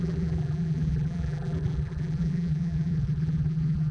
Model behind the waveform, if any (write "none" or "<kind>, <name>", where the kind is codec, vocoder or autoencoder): vocoder, BigVGAN v2